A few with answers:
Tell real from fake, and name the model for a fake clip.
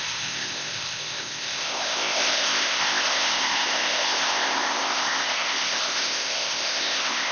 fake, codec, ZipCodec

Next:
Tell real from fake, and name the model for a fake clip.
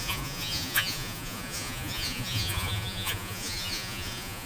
fake, vocoder, Vocos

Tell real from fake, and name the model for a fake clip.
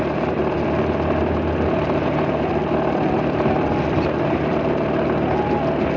real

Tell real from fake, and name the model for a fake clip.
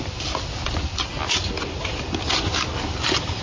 real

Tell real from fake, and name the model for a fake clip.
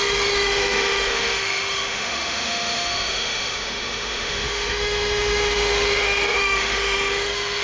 fake, autoencoder, DAC-VAE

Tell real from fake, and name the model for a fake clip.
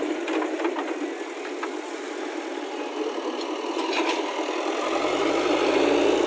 real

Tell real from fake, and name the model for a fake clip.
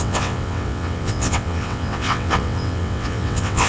fake, vocoder, WaveNeXt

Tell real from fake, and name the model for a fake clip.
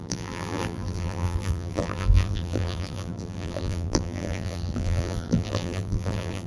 fake, vocoder, BigVGAN v2